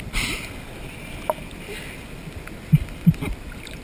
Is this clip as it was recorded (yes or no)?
yes